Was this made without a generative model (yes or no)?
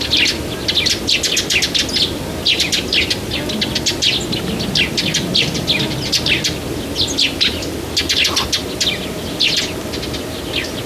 yes